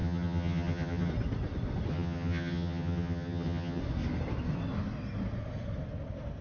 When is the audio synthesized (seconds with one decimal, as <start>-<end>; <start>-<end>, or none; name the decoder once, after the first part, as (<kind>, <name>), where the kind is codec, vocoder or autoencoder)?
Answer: 0.0-1.1 (vocoder, HiFi-GAN); 1.9-3.8